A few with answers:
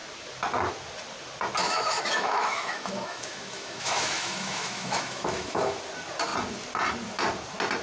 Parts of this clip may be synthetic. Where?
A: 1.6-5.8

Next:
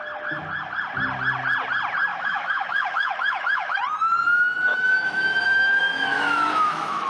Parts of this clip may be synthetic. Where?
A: 2.1-3.8; 4.7-7.1